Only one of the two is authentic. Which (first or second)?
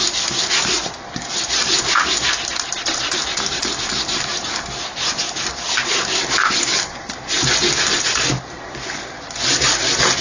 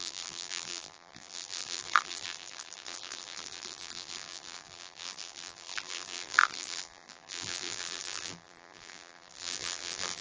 first